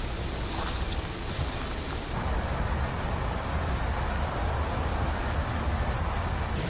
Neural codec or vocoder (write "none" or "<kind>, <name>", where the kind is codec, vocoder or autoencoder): none